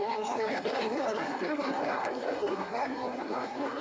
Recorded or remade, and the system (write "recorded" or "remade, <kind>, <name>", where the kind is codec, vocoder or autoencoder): remade, codec, SNAC